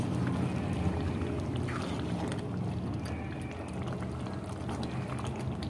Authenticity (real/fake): real